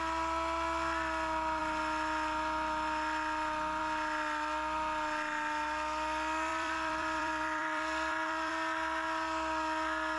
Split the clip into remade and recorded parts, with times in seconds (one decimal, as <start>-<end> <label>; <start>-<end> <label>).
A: 0.0-6.5 recorded; 6.5-8.5 remade; 8.5-10.2 recorded